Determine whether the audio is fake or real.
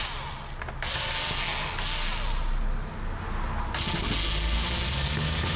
real